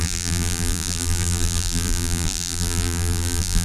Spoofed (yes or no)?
yes